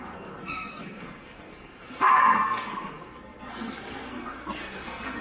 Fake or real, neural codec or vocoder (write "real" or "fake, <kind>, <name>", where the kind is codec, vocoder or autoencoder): fake, codec, SNAC